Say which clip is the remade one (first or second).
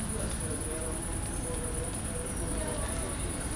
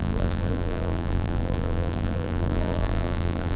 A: second